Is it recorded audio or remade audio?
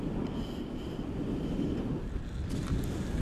recorded